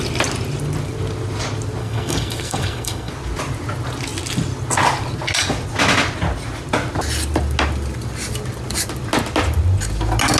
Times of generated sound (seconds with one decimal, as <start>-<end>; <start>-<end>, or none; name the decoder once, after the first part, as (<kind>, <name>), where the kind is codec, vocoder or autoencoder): 1.8-3.1 (codec, SNAC)